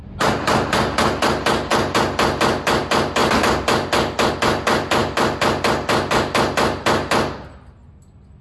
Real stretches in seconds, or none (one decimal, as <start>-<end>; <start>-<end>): 0.0-8.4